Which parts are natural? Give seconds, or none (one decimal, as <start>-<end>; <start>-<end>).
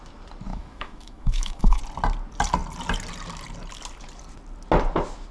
0.0-0.5; 1.8-5.3